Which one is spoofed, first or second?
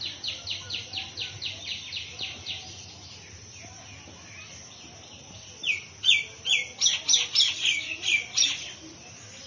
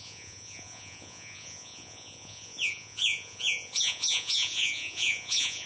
second